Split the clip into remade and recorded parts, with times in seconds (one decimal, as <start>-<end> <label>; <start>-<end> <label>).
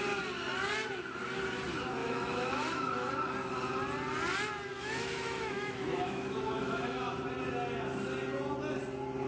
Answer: 0.0-2.0 recorded; 2.0-3.1 remade; 3.1-4.7 recorded; 4.7-7.1 remade; 7.1-9.3 recorded